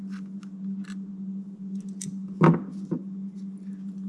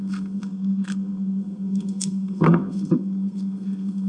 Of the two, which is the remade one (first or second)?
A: second